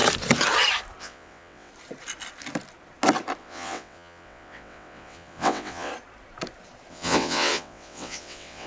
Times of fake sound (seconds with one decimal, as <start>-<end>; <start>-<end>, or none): 1.0-1.7; 3.4-5.9; 6.9-8.7